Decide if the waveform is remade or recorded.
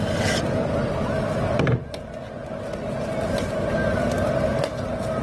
recorded